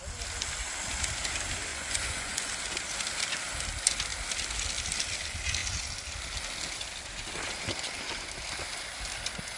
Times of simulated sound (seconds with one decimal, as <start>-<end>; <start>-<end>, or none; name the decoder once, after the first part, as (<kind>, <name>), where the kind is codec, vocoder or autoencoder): 1.7-2.5 (vocoder, Vocos)